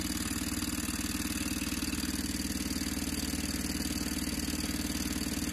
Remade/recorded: recorded